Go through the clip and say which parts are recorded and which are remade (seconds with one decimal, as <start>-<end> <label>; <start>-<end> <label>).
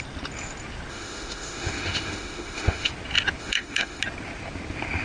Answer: 0.0-0.9 recorded; 0.9-2.9 remade; 2.9-3.4 recorded; 3.4-4.0 remade; 4.0-5.0 recorded